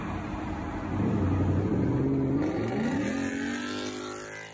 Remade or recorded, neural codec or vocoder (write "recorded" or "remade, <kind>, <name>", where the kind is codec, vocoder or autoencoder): recorded